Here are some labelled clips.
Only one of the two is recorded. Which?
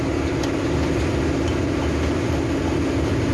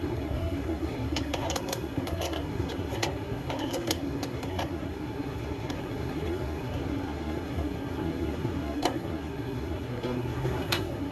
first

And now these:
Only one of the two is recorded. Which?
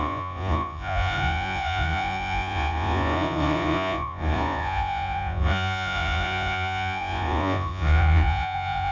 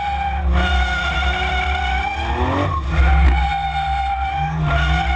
second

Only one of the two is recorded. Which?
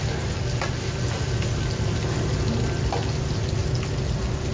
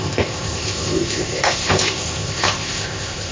first